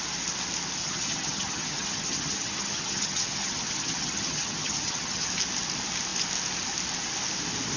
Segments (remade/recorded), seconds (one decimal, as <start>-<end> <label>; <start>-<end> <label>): 0.0-0.8 recorded; 0.8-5.3 remade; 5.3-7.8 recorded